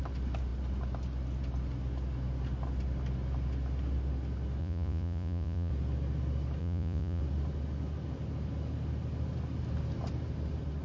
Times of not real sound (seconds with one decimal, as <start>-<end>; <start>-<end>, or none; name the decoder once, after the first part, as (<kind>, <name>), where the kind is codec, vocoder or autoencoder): 4.6-5.7 (vocoder, Vocos); 6.6-7.2